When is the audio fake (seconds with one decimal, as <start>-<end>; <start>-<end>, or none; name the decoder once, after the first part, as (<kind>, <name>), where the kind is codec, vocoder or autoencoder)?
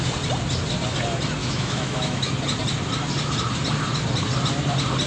1.4-2.3 (autoencoder, DAC-VAE)